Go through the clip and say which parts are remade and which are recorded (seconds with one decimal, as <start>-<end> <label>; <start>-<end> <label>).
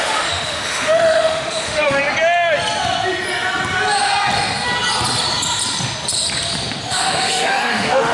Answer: 0.0-2.0 remade; 2.0-6.9 recorded; 6.9-8.1 remade